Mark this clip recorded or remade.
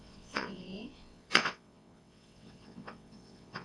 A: remade